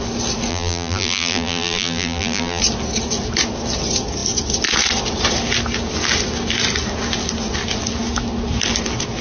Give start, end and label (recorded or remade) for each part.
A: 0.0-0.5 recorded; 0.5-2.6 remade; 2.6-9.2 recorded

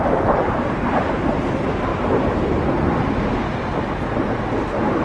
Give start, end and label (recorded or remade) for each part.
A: 0.0-5.0 recorded

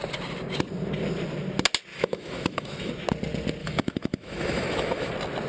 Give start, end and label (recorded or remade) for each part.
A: 0.0-1.9 recorded; 1.9-2.9 remade; 2.9-3.6 recorded; 3.6-5.1 remade; 5.1-5.5 recorded

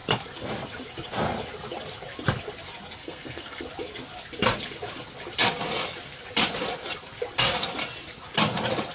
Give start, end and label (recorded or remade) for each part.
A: 0.0-3.0 recorded; 3.0-3.6 remade; 3.6-8.9 recorded